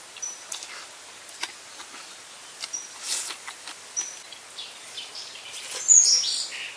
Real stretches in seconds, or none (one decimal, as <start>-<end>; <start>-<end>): 0.0-6.8